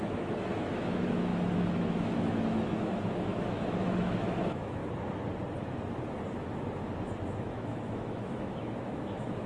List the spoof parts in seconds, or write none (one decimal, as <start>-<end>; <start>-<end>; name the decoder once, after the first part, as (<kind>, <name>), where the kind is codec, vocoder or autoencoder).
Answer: 0.0-4.8 (autoencoder, DAC-VAE); 7.4-9.5